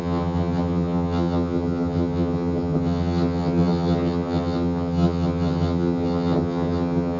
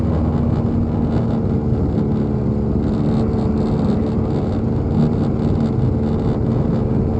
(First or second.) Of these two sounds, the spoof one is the first